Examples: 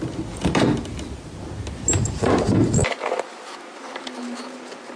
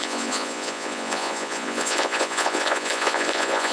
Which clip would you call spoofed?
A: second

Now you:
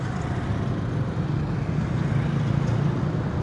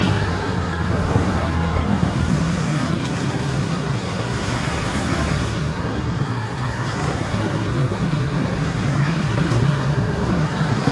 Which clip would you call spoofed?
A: second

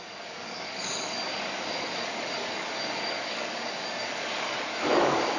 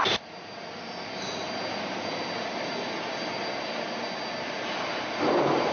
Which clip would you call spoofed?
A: first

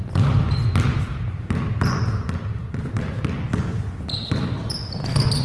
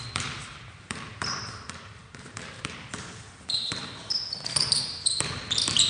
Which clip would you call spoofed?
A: second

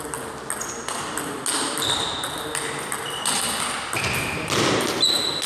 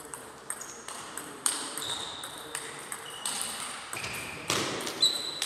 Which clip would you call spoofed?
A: second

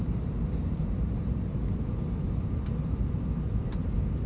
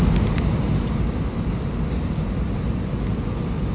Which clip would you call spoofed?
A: first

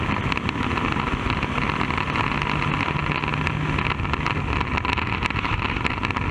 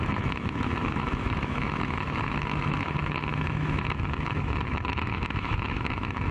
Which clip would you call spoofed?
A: second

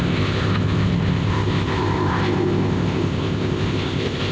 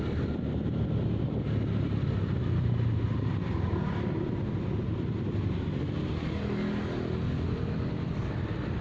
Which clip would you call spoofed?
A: first